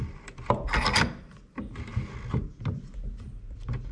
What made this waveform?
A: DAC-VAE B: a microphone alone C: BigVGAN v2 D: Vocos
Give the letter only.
B